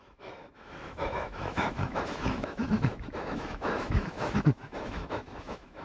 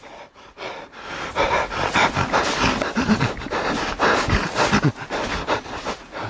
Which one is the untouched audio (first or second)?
second